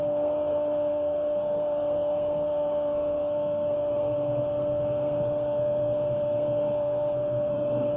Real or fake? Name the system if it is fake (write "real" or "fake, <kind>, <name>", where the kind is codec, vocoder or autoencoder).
fake, codec, SNAC